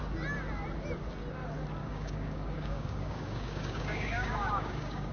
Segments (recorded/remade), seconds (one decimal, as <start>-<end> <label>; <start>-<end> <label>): 0.0-1.8 recorded; 1.8-5.1 remade